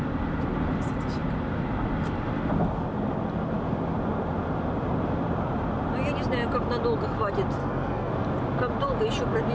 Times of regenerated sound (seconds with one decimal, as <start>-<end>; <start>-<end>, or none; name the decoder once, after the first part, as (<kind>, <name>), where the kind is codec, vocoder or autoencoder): 7.6-8.1 (codec, SNAC)